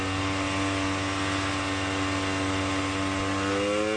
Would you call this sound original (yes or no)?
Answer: yes